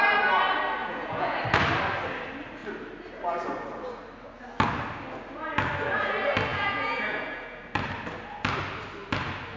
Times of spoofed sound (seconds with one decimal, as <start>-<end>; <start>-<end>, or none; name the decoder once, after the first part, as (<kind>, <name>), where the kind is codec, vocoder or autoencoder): 0.8-1.4 (vocoder, Vocos); 6.5-7.6